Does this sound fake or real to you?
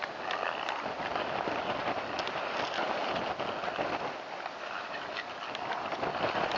real